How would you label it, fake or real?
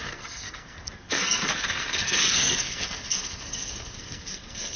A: fake